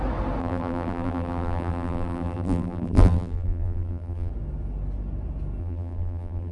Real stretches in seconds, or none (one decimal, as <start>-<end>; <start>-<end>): 0.0-0.4; 4.3-5.6